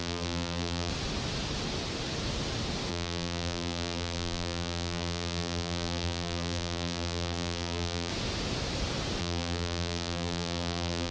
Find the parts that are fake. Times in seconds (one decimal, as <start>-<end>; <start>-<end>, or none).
0.0-0.9; 2.9-8.1; 9.2-11.1